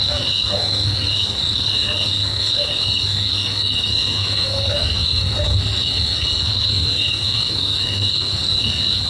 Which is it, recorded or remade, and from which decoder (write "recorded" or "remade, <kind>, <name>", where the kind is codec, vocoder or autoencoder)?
remade, codec, SNAC